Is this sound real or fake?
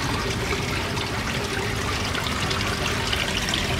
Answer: real